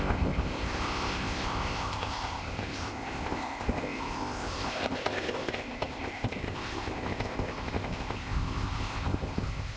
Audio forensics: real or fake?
fake